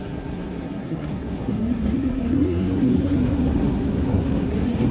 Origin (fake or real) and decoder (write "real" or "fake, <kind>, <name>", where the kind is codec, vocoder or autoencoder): fake, codec, SNAC